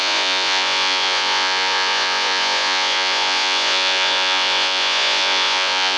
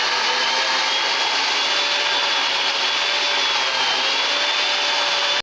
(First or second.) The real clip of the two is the second